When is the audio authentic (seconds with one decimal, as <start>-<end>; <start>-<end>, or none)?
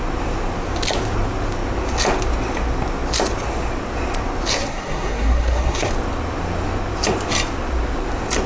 0.0-4.5; 5.9-8.5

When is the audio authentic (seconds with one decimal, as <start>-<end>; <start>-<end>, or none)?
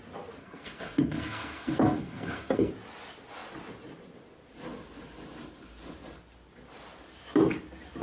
0.0-0.4; 2.7-8.0